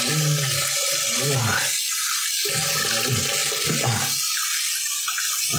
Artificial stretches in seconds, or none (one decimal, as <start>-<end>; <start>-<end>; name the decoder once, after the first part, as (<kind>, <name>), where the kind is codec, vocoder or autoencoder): none